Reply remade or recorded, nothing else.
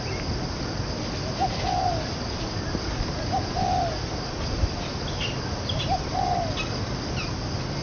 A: recorded